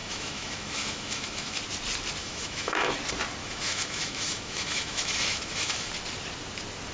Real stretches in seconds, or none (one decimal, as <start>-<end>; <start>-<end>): 1.6-2.2; 2.9-3.4; 5.9-6.9